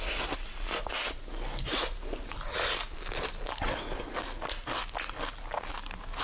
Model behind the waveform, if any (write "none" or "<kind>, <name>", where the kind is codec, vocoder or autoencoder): none